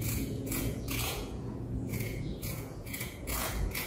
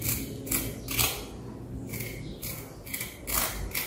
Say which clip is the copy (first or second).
first